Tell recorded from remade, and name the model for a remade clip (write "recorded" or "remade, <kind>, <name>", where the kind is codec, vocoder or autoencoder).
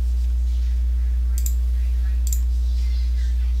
recorded